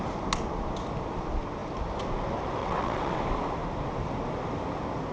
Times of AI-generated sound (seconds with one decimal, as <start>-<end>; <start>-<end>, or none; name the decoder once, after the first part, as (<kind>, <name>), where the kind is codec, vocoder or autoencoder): 2.6-3.2 (vocoder, WaveNeXt)